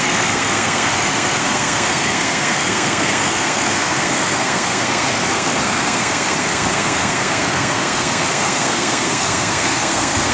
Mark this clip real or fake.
fake